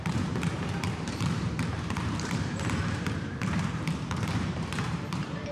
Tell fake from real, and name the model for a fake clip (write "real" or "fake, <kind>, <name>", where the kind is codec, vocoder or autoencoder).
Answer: fake, vocoder, BigVGAN v2